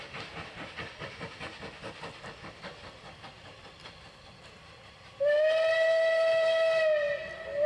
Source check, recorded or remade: recorded